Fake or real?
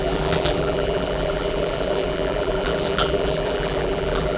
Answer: fake